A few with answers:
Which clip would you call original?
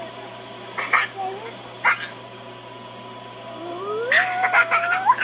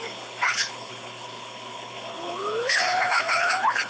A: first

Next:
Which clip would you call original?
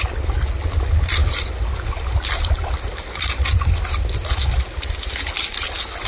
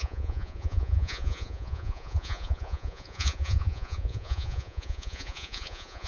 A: first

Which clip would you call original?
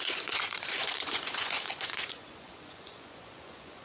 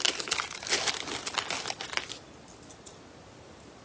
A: second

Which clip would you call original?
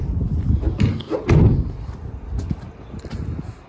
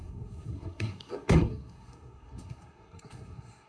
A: first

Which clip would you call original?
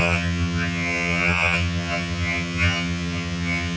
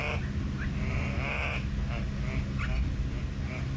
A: second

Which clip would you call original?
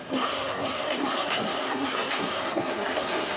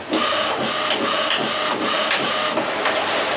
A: second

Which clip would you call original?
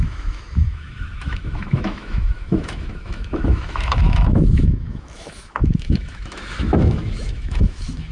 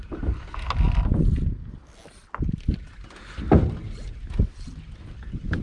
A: second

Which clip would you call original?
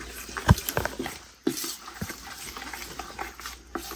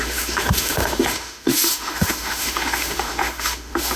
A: first